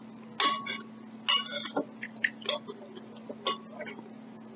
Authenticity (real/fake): real